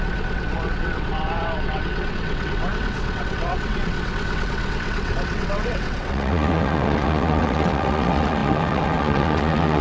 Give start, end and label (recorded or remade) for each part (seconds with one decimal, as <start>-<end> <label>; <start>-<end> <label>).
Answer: 0.0-9.8 remade